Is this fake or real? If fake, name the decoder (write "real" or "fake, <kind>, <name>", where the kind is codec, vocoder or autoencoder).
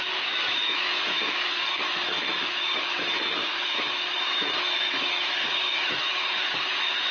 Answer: fake, autoencoder, DAC-VAE